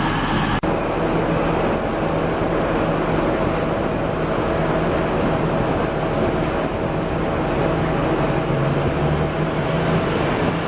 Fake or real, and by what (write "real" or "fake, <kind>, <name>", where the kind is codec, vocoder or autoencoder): real